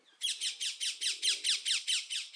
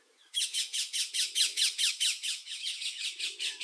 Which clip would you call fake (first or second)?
second